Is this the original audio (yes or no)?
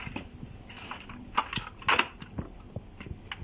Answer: yes